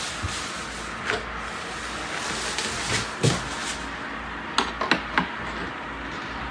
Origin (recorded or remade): recorded